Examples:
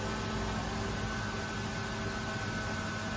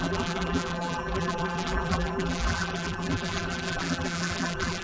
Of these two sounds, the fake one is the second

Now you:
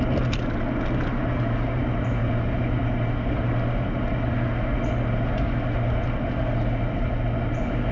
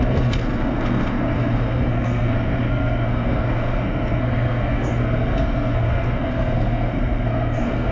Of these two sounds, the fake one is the second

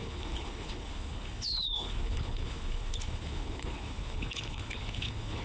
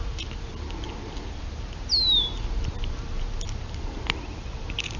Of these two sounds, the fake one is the first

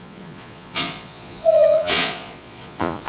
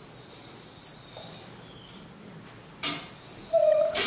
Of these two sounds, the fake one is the first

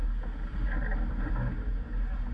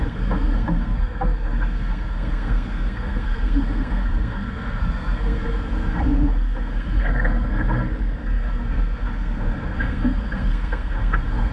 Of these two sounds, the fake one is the second